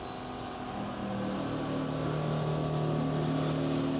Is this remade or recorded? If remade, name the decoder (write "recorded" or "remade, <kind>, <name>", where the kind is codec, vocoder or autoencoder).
recorded